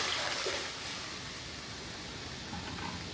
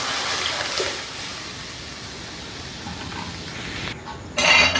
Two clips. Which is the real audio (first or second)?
first